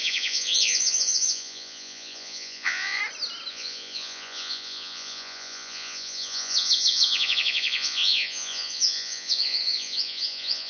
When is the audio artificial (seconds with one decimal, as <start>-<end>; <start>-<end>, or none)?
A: 0.0-3.0; 3.5-10.7